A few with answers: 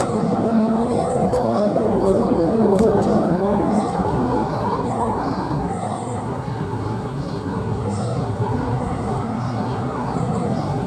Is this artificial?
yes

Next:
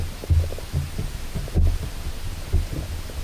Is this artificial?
no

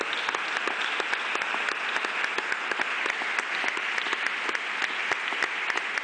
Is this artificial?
no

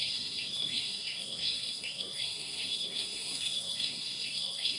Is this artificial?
yes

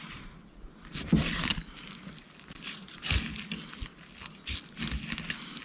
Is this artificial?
no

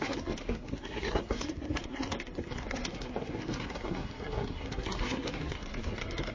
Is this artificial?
yes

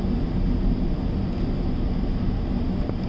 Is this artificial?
no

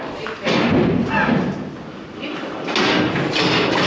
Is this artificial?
no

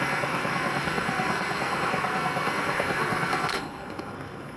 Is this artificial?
yes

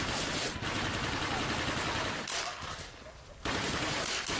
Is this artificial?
no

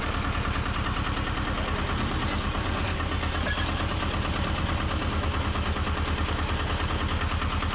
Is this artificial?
no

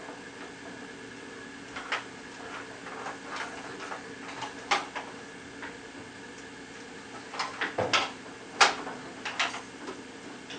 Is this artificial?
no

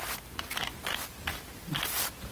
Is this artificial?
no